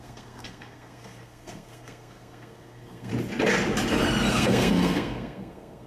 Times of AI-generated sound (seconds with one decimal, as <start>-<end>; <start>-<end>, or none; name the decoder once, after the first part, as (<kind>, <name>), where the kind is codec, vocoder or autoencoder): 0.0-3.1 (codec, SNAC); 4.3-5.9